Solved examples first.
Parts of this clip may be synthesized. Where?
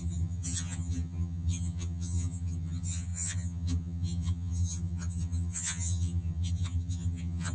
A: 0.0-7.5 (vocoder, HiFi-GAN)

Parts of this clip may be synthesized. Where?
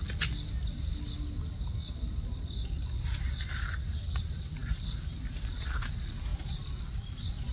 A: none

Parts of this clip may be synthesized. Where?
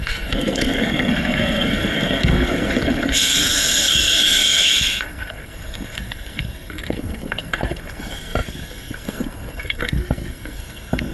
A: 0.0-11.1 (codec, SNAC)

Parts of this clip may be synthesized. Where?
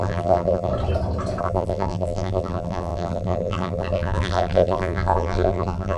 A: 0.0-0.7 (vocoder, BigVGAN v2); 1.4-6.0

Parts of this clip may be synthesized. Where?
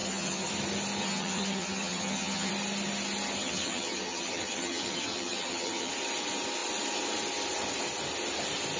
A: 0.0-0.5 (vocoder, HiFi-GAN); 1.0-2.5; 3.4-5.9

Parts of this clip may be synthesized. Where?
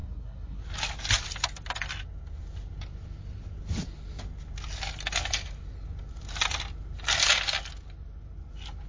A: 0.0-0.6 (codec, SNAC)